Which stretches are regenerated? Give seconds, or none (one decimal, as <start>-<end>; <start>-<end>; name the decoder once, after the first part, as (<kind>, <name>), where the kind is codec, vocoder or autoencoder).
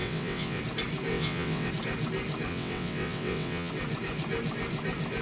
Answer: 0.0-0.6 (vocoder, WaveNeXt); 1.1-1.7; 2.5-3.7